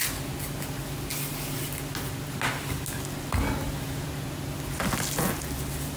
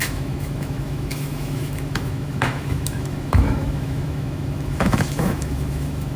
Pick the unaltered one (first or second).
first